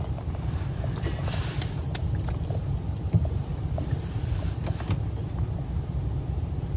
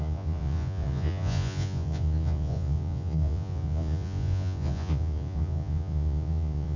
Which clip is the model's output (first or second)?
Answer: second